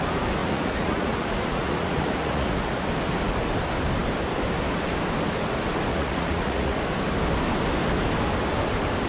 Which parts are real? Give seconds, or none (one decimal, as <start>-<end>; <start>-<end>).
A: 0.0-0.4; 2.7-5.9; 6.8-9.1